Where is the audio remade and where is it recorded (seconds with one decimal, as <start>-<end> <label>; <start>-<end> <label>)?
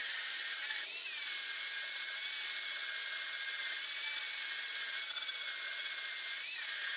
0.0-0.8 remade; 0.8-7.0 recorded